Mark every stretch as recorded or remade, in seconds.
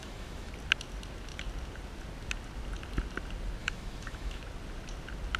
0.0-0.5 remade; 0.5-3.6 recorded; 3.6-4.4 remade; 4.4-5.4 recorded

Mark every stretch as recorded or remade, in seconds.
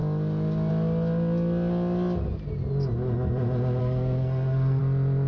0.0-3.8 recorded; 3.8-4.8 remade; 4.8-5.3 recorded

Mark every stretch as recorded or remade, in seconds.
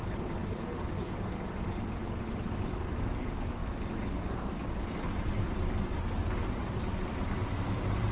0.0-0.4 remade; 0.4-2.6 recorded; 2.6-3.6 remade; 3.6-4.5 recorded; 4.5-8.1 remade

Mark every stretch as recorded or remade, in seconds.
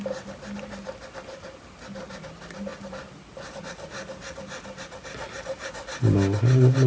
0.0-6.9 recorded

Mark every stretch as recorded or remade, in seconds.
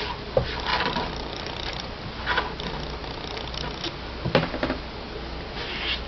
0.0-0.7 recorded; 0.7-2.1 remade; 2.1-6.1 recorded